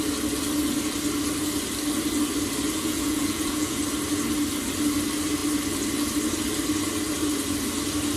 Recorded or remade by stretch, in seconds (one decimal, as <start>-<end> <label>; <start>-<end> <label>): 0.0-2.8 recorded; 2.8-3.8 remade; 3.8-8.2 recorded